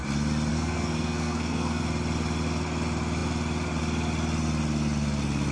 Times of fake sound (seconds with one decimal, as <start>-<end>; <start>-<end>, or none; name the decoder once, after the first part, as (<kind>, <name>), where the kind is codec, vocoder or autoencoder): 0.5-1.8 (codec, SNAC)